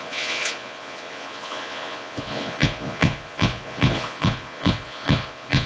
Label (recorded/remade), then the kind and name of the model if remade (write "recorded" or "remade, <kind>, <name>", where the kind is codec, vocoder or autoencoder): remade, vocoder, Vocos